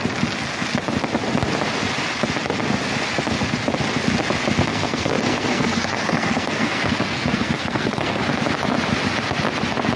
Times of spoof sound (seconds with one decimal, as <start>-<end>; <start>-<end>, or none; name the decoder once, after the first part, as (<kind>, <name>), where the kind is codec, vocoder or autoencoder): 4.7-8.2 (codec, SNAC)